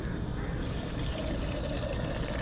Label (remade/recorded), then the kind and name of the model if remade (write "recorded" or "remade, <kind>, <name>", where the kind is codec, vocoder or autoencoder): recorded